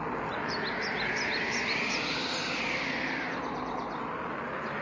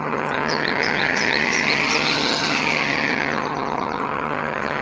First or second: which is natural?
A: first